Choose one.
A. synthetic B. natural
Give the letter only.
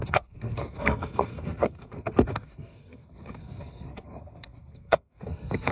A